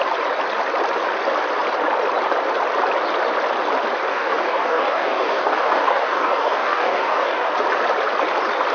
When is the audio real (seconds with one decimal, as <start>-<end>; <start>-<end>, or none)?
0.0-4.1; 7.5-8.7